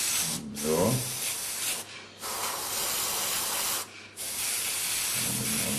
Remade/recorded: recorded